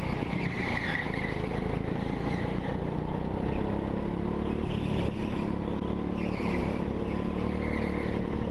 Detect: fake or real real